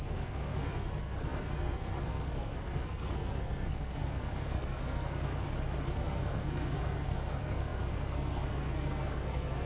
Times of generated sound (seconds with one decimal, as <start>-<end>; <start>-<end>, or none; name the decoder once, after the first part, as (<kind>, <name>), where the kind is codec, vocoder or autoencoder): 0.0-5.3 (codec, SNAC); 5.8-9.7